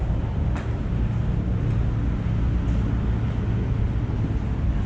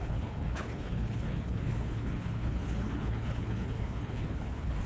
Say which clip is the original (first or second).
first